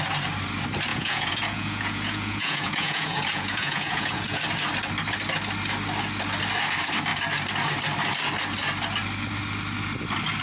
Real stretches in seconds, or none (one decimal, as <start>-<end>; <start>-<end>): 0.0-0.9; 4.4-10.4